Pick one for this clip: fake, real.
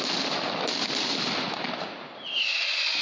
real